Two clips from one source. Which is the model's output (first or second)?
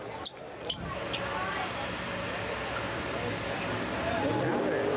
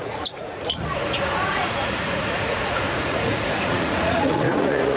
second